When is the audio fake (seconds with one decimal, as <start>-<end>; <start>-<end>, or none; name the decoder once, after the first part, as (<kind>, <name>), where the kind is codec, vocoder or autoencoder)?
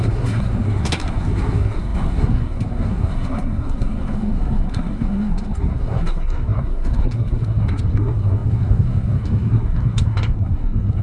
0.0-11.0 (codec, SNAC)